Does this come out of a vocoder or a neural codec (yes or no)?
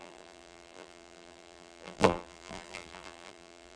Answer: yes